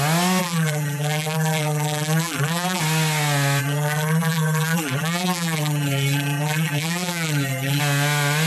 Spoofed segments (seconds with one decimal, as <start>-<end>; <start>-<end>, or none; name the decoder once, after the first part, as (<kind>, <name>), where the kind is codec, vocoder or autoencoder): 0.4-2.8 (vocoder, BigVGAN v2); 3.6-7.8